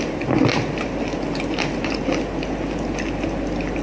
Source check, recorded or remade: recorded